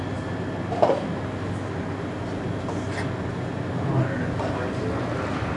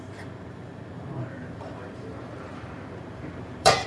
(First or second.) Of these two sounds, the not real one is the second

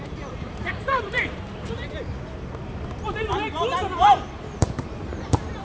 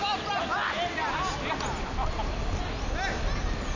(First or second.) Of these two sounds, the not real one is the first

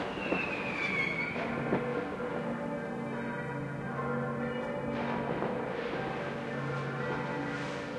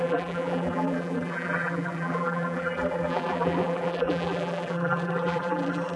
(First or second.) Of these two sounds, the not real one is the second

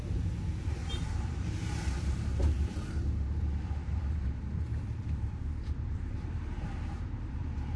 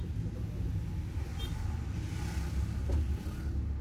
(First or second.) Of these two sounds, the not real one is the first